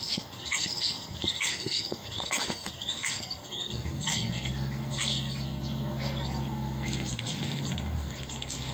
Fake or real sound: fake